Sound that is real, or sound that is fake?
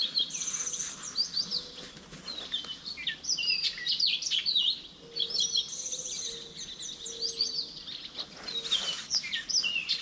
real